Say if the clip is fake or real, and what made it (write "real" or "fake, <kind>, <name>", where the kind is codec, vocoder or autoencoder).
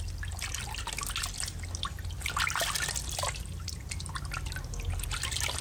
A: real